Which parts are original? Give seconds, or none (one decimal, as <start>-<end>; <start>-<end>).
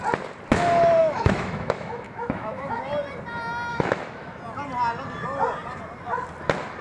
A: 0.0-1.0; 2.9-3.7; 4.4-6.8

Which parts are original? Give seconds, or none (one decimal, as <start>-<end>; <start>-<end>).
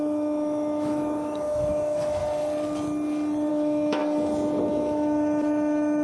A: 2.2-3.5; 4.0-4.7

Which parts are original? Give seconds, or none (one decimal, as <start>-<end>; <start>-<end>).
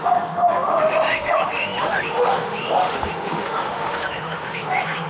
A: none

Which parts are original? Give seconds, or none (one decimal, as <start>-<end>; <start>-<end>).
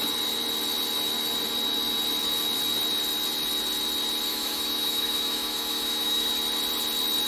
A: 0.0-4.3; 6.3-7.3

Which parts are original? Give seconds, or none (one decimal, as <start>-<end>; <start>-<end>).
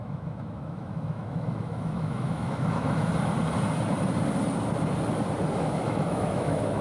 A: 3.1-5.5